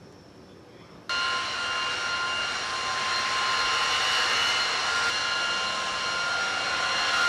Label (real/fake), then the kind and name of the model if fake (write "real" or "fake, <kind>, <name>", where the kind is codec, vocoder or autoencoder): real